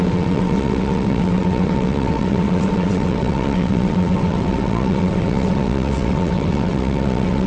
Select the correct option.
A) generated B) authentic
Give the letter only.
A